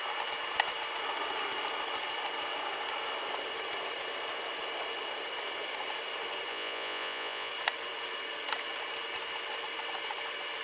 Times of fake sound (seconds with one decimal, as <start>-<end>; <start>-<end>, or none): 6.5-7.5